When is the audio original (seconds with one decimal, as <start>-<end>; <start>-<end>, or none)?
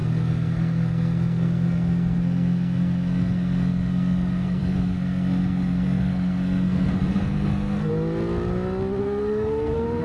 7.9-9.0